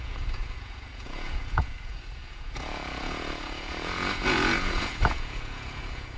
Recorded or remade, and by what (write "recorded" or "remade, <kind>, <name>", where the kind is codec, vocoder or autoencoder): remade, vocoder, Vocos